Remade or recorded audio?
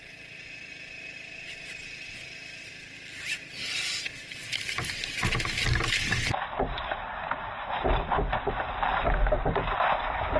recorded